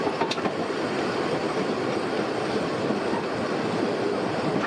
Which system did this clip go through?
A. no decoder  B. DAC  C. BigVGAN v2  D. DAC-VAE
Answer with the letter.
A